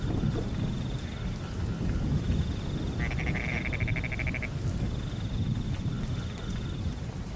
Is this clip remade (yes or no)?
no